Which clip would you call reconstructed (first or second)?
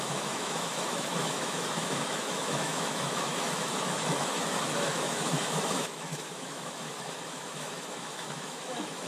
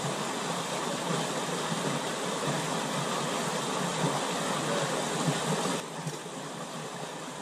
first